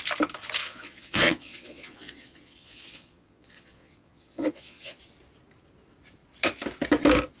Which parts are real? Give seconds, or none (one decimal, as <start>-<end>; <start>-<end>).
0.0-0.6; 5.0-7.4

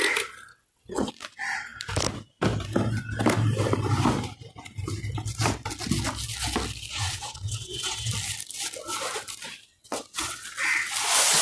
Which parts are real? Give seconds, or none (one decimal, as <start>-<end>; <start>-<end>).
0.0-0.5; 1.1-6.9; 8.1-9.7; 10.5-11.4

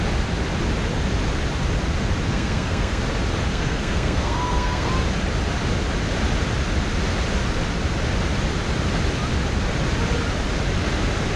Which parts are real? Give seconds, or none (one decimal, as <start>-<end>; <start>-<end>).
0.0-2.3; 3.0-3.5; 4.9-11.4

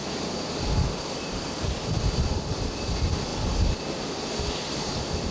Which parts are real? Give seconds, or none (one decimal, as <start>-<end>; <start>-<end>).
3.3-4.4

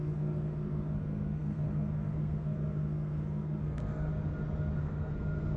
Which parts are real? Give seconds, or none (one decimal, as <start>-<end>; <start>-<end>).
4.1-4.8

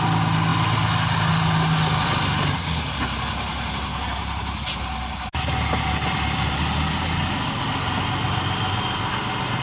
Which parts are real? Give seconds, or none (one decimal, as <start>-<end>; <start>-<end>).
0.0-9.6

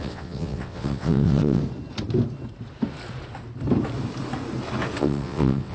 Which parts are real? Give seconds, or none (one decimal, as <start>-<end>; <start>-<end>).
1.6-5.0

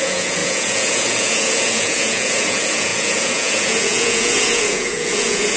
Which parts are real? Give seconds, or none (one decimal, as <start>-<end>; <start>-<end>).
none